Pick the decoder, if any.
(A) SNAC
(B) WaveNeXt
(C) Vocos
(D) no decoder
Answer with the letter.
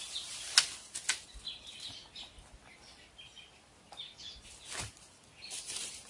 D